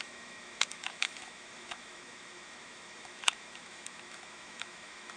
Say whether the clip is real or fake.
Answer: fake